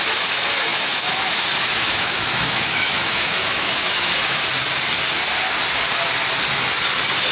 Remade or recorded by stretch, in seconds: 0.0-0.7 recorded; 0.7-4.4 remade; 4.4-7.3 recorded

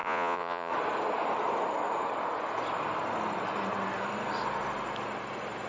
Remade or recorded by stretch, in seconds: 0.0-0.7 remade; 0.7-5.7 recorded

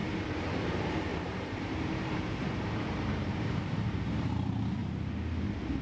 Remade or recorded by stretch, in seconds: 0.0-4.8 remade; 4.8-5.8 recorded

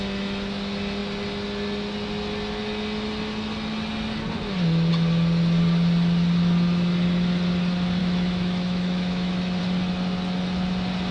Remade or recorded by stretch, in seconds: 0.0-8.0 recorded; 8.0-9.6 remade; 9.6-11.1 recorded

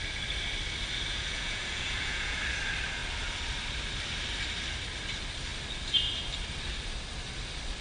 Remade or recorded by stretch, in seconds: 0.0-1.1 recorded; 1.1-2.4 remade; 2.4-7.8 recorded